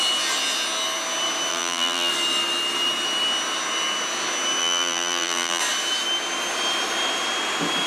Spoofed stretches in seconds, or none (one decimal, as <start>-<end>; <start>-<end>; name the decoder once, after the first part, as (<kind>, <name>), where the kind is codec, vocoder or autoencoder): 1.5-2.1 (vocoder, BigVGAN v2); 4.6-5.6